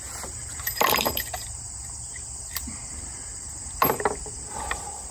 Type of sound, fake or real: fake